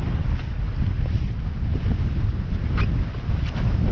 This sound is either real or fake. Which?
real